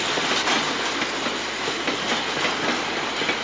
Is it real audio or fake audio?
real